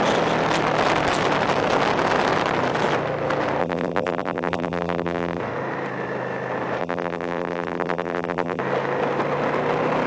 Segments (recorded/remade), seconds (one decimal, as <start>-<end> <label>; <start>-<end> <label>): 0.0-3.6 recorded; 3.6-5.4 remade; 5.4-6.8 recorded; 6.8-8.6 remade; 8.6-10.1 recorded